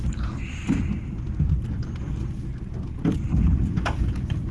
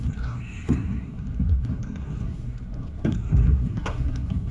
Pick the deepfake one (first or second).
second